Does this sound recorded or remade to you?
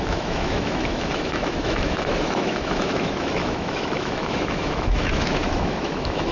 remade